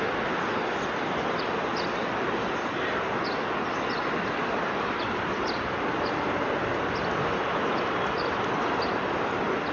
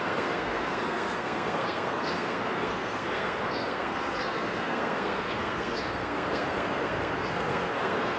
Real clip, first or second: first